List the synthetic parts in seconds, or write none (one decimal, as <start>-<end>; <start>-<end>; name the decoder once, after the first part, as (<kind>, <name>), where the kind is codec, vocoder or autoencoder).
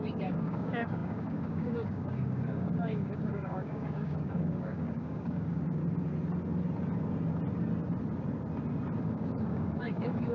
0.0-5.8 (codec, DAC); 9.0-10.3